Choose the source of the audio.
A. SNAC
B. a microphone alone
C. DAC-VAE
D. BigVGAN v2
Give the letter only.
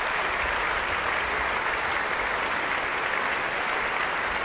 B